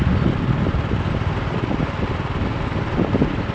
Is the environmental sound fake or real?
real